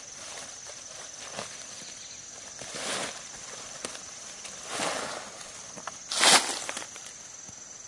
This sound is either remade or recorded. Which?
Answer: recorded